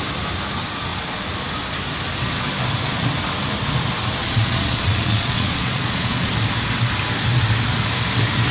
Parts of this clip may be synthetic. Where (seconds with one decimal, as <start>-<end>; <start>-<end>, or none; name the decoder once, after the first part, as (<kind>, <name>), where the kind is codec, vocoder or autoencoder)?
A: 4.2-6.3 (vocoder, Vocos)